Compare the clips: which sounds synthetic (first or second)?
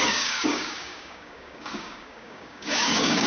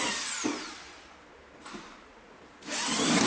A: first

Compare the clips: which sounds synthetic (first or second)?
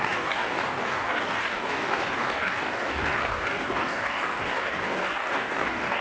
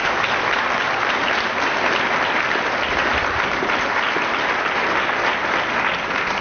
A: first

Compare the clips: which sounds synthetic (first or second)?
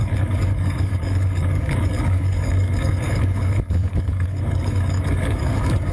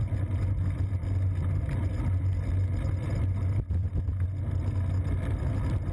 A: first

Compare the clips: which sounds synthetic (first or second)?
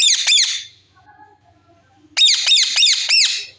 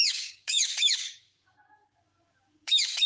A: second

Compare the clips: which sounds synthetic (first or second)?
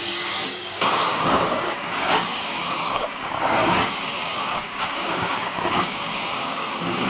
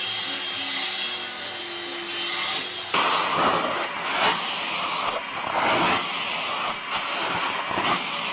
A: first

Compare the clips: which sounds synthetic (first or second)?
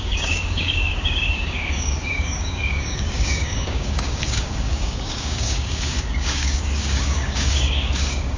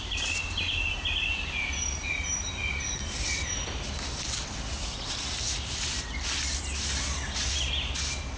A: first